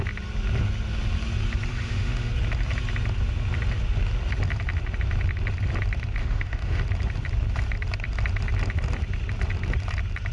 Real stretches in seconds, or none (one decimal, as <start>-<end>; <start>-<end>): 0.0-1.7; 2.3-6.2; 6.8-10.3